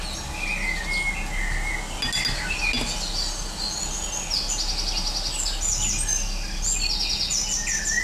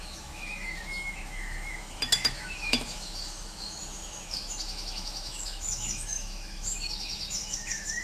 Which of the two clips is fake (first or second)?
second